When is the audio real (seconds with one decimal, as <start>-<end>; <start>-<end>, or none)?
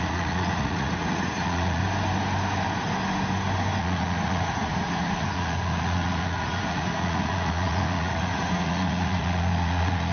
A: 1.8-3.8